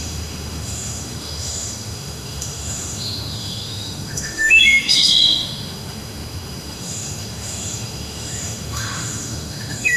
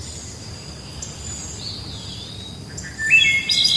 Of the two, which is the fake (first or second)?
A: first